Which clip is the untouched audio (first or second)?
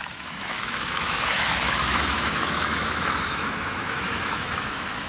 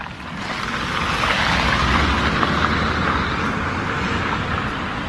second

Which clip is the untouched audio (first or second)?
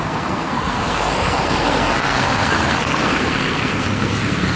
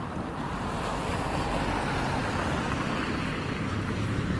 second